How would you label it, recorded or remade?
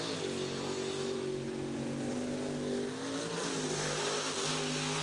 recorded